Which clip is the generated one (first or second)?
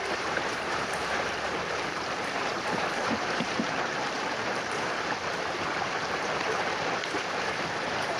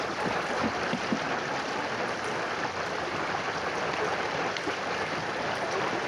first